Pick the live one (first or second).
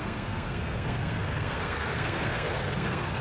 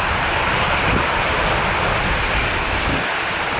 second